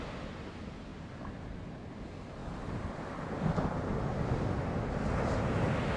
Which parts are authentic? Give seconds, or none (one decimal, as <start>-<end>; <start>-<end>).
0.0-0.9; 1.9-2.4; 2.9-6.0